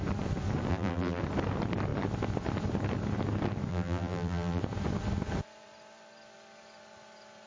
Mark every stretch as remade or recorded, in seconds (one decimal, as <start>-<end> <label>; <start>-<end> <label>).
0.0-0.7 recorded; 0.7-1.2 remade; 1.2-3.7 recorded; 3.7-4.6 remade; 4.6-7.5 recorded